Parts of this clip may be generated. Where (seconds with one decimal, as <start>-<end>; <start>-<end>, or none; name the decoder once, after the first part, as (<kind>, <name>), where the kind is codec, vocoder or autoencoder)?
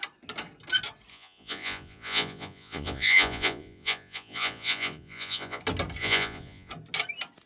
1.1-5.6 (vocoder, Vocos); 6.0-6.7